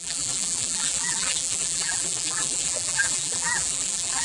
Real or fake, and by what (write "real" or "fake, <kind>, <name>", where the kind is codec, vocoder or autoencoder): fake, vocoder, BigVGAN v2